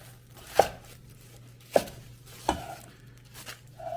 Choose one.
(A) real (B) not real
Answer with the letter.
A